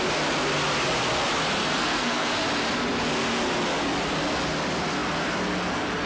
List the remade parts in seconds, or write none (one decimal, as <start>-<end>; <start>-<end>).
1.6-2.3